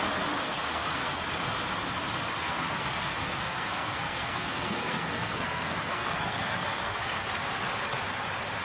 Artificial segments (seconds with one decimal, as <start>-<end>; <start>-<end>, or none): 0.4-1.2; 2.4-7.3